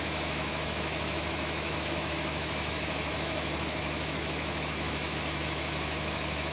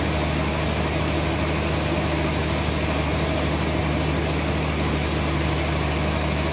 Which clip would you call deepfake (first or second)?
first